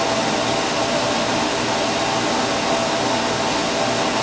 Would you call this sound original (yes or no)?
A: yes